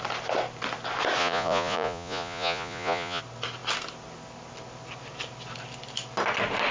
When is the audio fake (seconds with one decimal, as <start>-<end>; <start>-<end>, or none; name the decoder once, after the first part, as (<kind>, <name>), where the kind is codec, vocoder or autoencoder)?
1.2-3.2 (vocoder, Vocos)